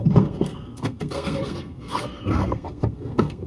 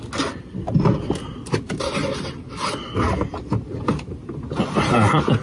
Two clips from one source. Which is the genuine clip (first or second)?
second